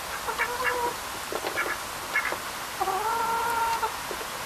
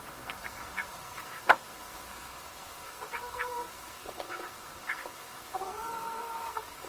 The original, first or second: first